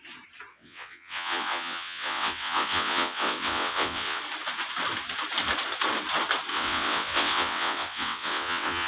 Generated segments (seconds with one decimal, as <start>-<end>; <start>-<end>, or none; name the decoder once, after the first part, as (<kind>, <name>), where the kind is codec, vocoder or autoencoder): 0.5-4.2 (vocoder, WaveNeXt); 6.5-8.9